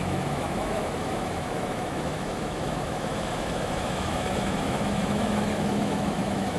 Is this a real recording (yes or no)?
no